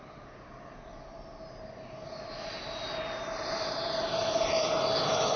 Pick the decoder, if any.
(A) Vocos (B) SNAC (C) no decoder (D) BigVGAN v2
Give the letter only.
C